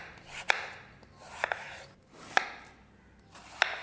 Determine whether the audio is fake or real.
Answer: real